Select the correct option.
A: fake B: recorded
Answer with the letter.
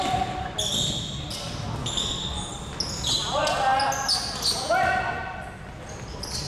B